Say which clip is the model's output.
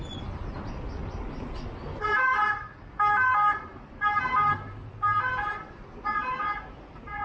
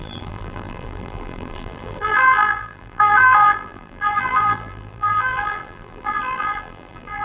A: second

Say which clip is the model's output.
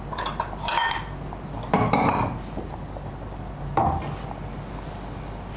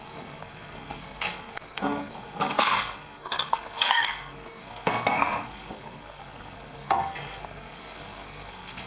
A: second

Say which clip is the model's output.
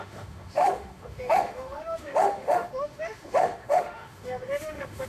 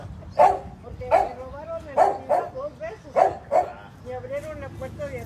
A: first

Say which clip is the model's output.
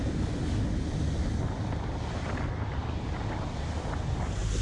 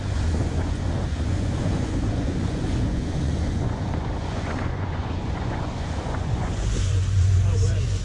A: second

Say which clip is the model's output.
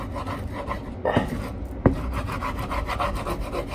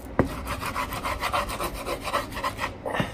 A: second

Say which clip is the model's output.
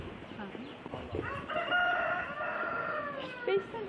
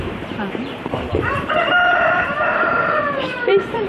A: second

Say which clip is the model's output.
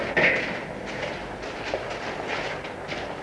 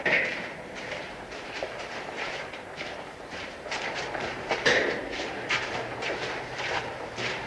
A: second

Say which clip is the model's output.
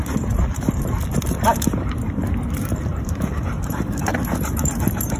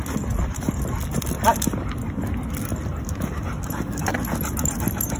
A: first